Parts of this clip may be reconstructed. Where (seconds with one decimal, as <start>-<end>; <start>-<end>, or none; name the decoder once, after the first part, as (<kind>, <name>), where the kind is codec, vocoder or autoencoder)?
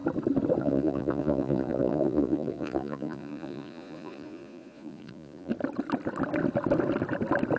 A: 0.6-5.5 (vocoder, Vocos)